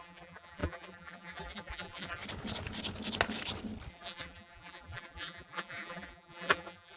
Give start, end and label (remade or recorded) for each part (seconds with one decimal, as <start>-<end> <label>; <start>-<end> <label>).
0.0-2.2 remade; 2.2-3.9 recorded; 3.9-7.0 remade